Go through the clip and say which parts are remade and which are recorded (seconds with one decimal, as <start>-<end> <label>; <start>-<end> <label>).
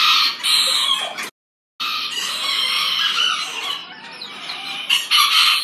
0.0-1.9 recorded; 1.9-3.3 remade; 3.3-3.8 recorded; 3.8-5.6 remade